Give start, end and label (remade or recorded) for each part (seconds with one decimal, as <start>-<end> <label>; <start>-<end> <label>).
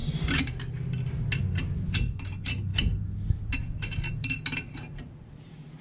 0.0-5.8 recorded